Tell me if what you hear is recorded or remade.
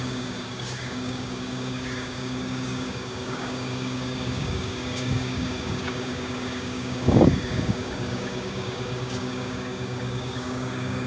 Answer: remade